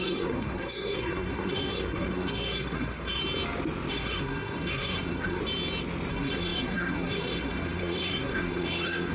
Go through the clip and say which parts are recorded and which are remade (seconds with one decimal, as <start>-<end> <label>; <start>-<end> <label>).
0.0-3.2 remade; 3.2-3.9 recorded; 3.9-5.4 remade; 5.4-6.1 recorded; 6.1-9.1 remade